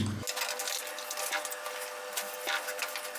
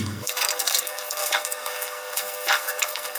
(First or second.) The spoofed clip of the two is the second